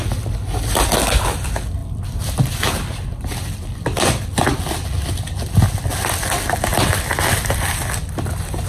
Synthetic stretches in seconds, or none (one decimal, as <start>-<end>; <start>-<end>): 1.8-4.7; 6.7-7.7